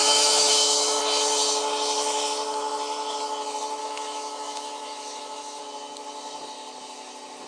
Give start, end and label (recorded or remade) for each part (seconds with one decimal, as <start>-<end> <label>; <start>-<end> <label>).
0.0-1.0 remade; 1.0-3.8 recorded; 3.8-5.6 remade; 5.6-7.5 recorded

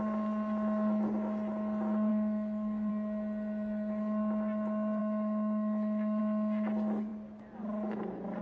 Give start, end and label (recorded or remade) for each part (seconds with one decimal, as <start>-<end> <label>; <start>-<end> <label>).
0.0-2.1 recorded; 2.1-2.9 remade; 2.9-5.0 recorded; 5.0-6.2 remade; 6.2-8.4 recorded